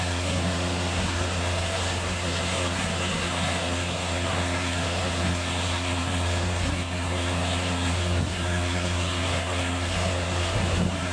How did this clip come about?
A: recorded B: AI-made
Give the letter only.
B